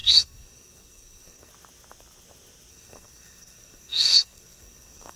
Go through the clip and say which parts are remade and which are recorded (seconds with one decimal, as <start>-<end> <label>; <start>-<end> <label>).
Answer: 0.0-1.5 remade; 1.5-2.7 recorded; 2.7-5.2 remade

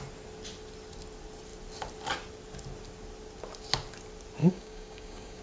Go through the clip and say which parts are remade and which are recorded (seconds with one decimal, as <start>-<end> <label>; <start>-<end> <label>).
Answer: 0.0-4.4 recorded; 4.4-5.4 remade

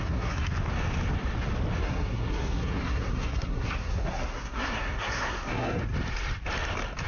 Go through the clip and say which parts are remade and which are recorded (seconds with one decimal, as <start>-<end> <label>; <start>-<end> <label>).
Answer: 0.0-0.5 remade; 0.5-1.8 recorded; 1.8-5.8 remade; 5.8-7.1 recorded

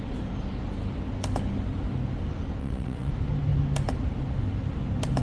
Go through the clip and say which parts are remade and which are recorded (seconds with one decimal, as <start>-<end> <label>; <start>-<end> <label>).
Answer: 0.0-2.6 recorded; 2.6-3.1 remade; 3.1-5.2 recorded